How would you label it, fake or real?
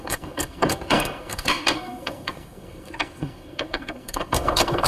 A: fake